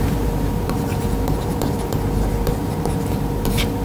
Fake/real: fake